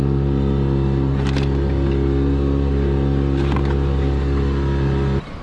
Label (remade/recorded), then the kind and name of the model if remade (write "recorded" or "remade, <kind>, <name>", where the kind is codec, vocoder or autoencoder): recorded